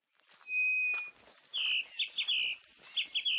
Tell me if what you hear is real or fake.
real